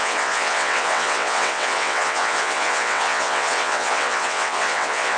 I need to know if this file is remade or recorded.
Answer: remade